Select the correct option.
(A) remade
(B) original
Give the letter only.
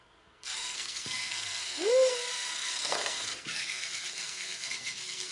A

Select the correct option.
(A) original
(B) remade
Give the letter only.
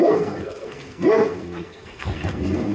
B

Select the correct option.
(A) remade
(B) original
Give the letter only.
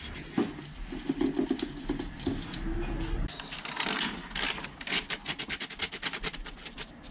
B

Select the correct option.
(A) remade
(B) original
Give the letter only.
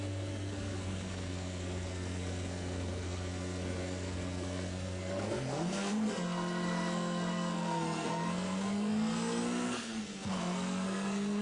A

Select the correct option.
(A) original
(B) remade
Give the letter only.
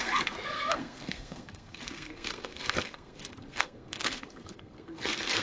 B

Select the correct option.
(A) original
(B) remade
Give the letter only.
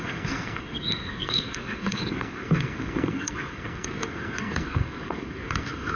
B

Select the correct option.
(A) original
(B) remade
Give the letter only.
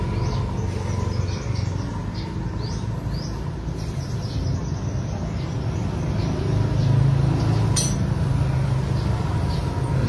A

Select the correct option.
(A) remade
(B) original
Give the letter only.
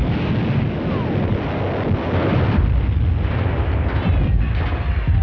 B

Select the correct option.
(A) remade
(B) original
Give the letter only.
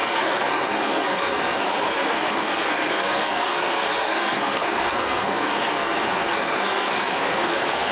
A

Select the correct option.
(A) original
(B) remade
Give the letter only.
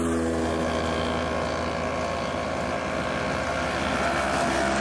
A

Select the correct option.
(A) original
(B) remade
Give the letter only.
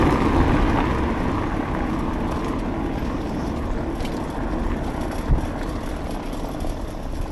A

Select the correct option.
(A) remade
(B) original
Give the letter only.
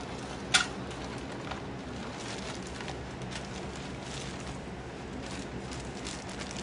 B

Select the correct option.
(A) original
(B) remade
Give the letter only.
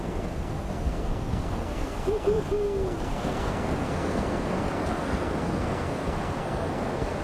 B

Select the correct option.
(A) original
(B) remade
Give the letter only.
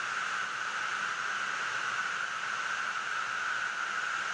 A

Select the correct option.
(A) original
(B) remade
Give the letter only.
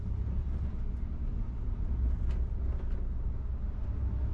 A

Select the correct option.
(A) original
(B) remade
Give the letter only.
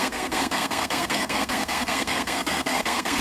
B